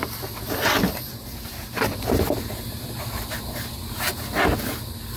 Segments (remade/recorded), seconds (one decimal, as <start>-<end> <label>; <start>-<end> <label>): 0.0-1.2 recorded; 1.2-4.1 remade; 4.1-5.2 recorded